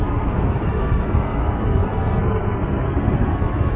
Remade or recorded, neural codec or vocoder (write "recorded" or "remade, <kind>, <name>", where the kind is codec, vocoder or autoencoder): remade, codec, SNAC